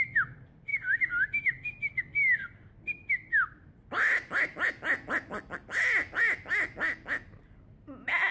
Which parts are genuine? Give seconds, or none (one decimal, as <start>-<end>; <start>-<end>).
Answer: 0.0-8.3